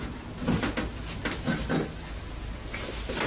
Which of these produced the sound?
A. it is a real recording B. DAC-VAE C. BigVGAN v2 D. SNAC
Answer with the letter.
A